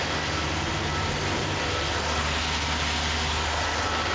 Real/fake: real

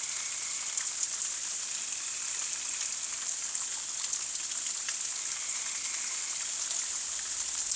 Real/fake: real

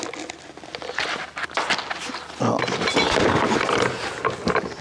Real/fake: real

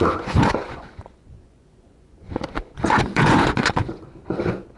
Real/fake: fake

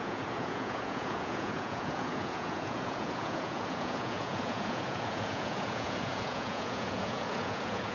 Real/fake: fake